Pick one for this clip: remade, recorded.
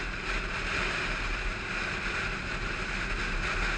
recorded